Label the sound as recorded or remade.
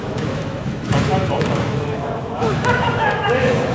remade